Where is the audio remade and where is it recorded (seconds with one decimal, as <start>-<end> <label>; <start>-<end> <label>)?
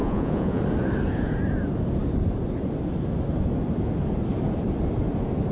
0.0-0.6 remade; 0.6-5.5 recorded